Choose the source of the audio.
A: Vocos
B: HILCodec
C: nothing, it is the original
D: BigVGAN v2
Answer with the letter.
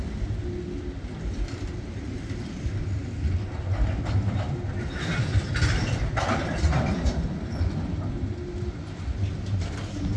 C